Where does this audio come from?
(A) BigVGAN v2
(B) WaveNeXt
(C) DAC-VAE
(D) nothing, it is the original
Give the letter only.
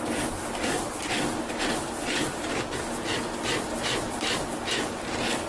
D